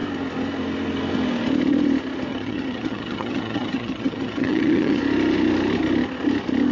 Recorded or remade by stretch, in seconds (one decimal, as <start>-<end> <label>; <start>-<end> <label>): 0.0-2.3 recorded; 2.3-5.0 remade; 5.0-6.7 recorded